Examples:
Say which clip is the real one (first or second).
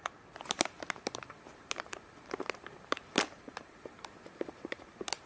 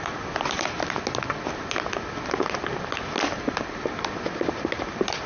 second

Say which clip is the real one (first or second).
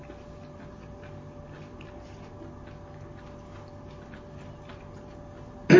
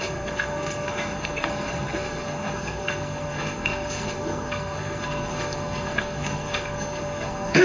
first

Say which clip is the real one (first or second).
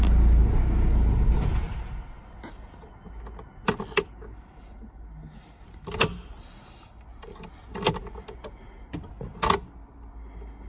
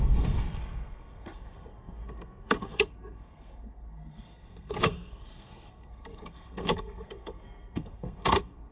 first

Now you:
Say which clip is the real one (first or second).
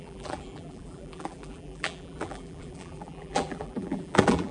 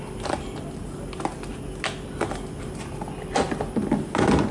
second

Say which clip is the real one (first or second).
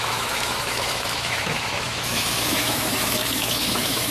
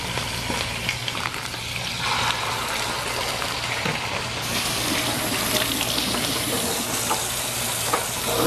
second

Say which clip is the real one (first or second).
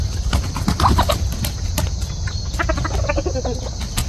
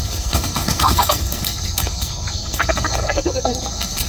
first